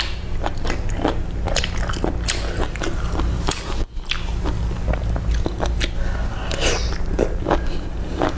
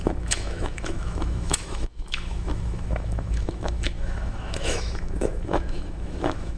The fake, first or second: second